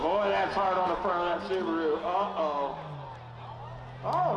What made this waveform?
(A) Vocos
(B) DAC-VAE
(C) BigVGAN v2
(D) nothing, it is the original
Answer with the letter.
D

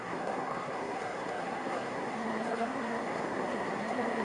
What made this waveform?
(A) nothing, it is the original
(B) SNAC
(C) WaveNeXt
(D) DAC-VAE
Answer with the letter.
B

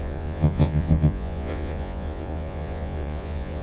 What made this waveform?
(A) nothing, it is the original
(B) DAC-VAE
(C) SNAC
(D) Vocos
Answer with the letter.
D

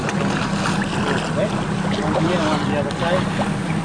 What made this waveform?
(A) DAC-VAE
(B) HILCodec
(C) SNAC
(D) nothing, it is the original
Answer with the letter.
D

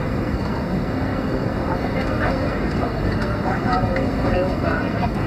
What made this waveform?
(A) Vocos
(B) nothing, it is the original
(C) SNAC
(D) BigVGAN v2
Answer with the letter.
C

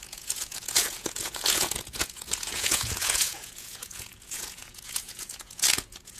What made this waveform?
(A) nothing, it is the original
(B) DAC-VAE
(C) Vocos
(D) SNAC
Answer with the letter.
C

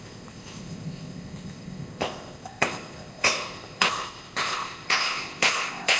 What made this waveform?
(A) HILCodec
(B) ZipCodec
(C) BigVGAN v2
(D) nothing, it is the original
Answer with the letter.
B